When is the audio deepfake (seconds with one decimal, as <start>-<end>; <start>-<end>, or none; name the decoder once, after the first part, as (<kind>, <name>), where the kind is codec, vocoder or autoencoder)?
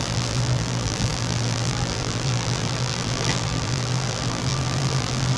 0.0-5.4 (vocoder, BigVGAN v2)